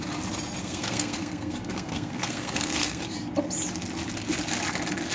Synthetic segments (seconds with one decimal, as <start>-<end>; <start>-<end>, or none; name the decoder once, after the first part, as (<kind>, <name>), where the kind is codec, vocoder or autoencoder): 0.6-3.0 (codec, SNAC)